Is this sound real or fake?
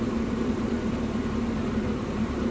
fake